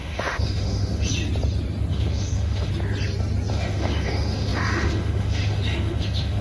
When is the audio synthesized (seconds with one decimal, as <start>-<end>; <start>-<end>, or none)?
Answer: 0.0-1.1; 1.9-2.7; 3.5-6.4